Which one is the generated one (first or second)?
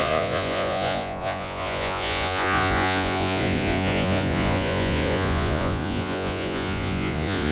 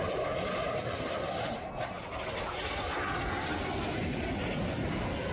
first